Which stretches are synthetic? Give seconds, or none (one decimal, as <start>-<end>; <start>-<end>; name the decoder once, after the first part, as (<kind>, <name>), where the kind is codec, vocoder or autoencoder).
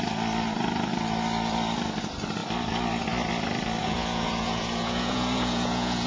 3.8-6.1 (vocoder, Vocos)